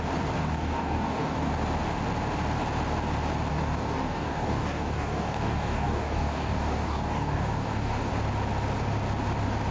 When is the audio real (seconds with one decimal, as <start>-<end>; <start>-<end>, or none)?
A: 0.0-0.4; 1.5-3.5; 8.1-9.7